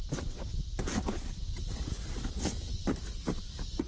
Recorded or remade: remade